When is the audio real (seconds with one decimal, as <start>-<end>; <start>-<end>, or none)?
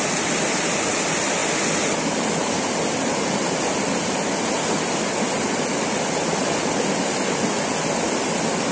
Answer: 0.0-8.7